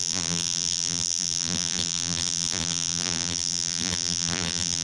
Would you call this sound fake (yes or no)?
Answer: yes